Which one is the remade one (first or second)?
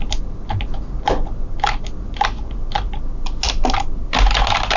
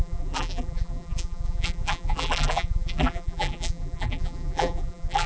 second